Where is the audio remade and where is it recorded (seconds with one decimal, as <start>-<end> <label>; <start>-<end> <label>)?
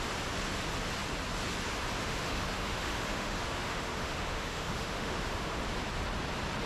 0.0-2.0 recorded; 2.0-5.6 remade; 5.6-6.7 recorded